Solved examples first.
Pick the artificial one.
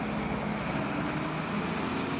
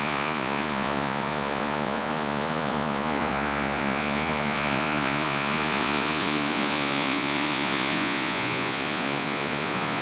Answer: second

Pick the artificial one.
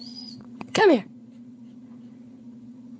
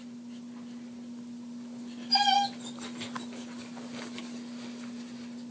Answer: first